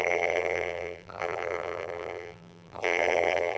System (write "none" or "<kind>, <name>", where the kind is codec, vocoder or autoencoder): vocoder, BigVGAN v2